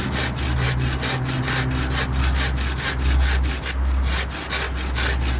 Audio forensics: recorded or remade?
recorded